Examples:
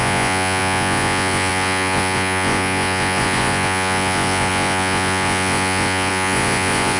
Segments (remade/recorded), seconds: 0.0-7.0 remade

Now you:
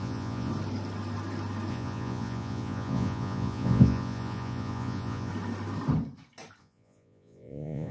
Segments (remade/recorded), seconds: 0.0-0.5 remade; 0.5-1.7 recorded; 1.7-5.3 remade; 5.3-6.6 recorded; 6.6-7.9 remade